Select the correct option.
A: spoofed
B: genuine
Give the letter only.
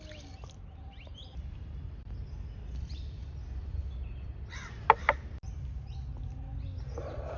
B